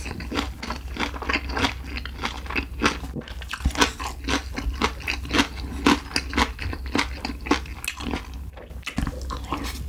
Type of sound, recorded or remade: recorded